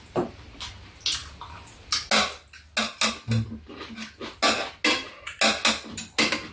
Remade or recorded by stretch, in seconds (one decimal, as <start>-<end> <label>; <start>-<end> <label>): 0.0-6.5 recorded